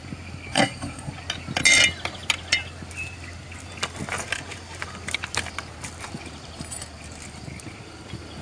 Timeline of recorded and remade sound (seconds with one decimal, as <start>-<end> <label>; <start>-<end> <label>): 0.0-0.5 recorded; 0.5-1.1 remade; 1.1-8.4 recorded